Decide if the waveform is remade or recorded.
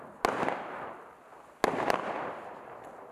recorded